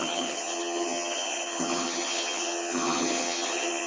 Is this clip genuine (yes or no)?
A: no